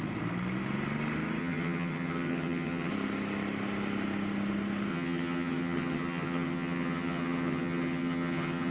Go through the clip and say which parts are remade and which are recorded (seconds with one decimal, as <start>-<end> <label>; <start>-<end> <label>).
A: 0.0-1.4 recorded; 1.4-2.9 remade; 2.9-4.9 recorded; 4.9-8.7 remade